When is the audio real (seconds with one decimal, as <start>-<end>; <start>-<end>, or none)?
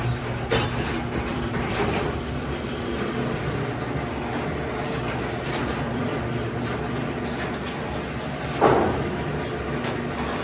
0.0-1.3; 3.6-5.6; 6.2-10.4